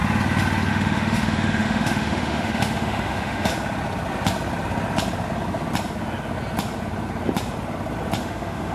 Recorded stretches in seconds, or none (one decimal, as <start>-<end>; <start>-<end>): 0.0-0.7; 3.5-8.2